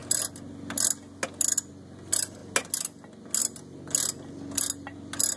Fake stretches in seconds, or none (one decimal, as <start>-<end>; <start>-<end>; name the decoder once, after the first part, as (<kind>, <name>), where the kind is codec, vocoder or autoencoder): none